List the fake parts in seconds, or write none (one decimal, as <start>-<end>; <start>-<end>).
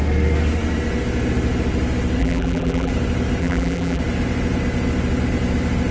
2.2-2.9; 3.4-4.0